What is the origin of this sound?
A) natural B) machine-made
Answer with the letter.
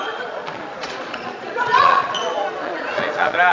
B